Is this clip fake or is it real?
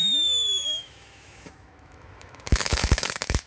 fake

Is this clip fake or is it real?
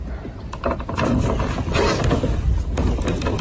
real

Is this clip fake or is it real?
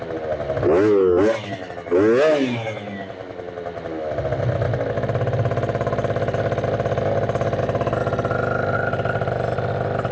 real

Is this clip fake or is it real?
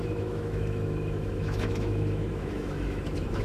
fake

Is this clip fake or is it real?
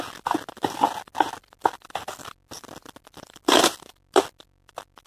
real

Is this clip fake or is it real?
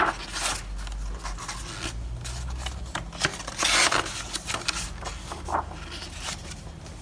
real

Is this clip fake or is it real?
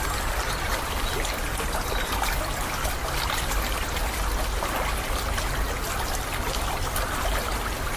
real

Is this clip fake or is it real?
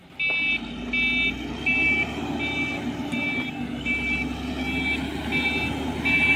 real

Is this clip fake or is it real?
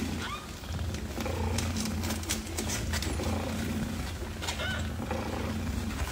real